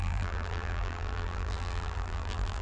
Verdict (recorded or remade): remade